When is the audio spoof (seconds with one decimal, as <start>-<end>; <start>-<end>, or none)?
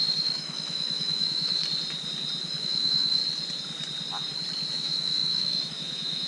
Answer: 0.0-1.6; 2.6-3.2; 4.7-6.3